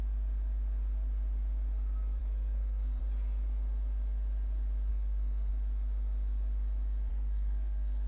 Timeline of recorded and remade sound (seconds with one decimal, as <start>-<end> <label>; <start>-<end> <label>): 0.0-2.2 recorded; 2.2-3.0 remade; 3.0-4.9 recorded; 4.9-5.5 remade; 5.5-7.1 recorded; 7.1-8.1 remade